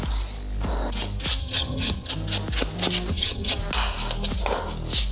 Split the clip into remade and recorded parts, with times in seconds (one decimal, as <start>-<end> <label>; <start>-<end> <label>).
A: 0.0-1.4 recorded; 1.4-2.1 remade; 2.1-3.1 recorded; 3.1-3.6 remade; 3.6-5.1 recorded